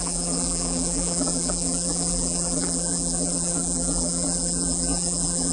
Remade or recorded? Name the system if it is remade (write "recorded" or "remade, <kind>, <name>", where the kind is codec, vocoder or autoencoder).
remade, vocoder, BigVGAN v2